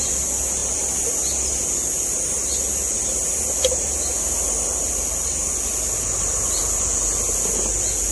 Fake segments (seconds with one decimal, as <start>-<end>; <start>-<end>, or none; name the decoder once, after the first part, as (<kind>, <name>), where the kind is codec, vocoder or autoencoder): none